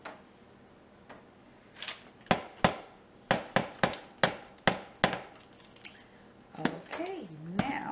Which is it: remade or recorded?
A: recorded